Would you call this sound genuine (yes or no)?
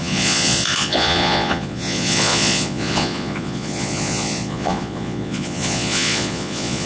no